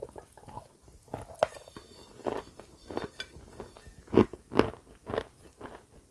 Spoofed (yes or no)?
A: no